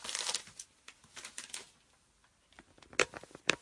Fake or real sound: real